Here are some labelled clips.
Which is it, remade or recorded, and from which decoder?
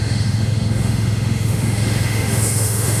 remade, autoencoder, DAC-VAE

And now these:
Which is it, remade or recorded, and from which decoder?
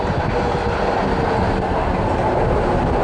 recorded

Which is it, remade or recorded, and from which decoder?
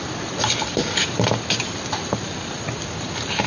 recorded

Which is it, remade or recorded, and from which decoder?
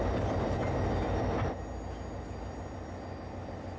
recorded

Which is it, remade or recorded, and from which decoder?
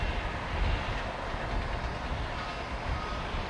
recorded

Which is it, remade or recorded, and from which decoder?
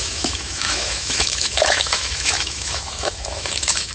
remade, autoencoder, DAC-VAE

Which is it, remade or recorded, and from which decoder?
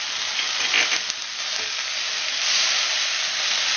recorded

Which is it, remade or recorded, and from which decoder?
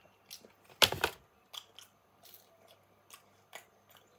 recorded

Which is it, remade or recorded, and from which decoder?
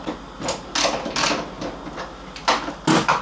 recorded